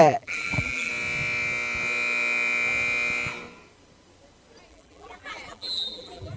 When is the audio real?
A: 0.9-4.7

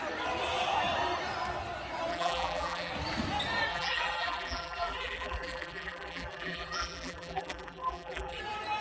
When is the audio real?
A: 0.0-2.1; 2.9-3.7; 8.4-8.8